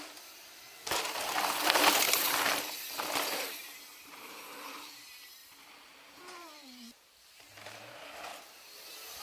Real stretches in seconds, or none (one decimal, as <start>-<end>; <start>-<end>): 0.0-3.9; 4.7-5.4; 7.9-8.3